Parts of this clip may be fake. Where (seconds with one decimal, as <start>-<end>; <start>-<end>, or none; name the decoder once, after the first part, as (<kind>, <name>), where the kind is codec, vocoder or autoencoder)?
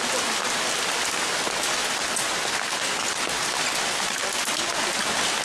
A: none